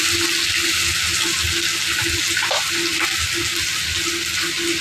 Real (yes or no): yes